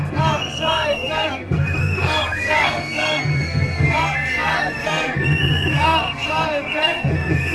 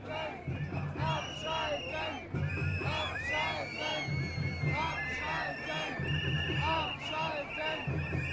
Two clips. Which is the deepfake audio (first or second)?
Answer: first